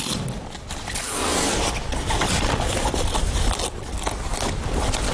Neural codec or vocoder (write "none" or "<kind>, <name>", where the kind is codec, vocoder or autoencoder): none